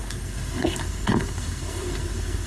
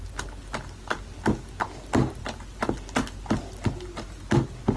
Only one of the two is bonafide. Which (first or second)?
second